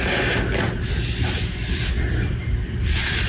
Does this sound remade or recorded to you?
recorded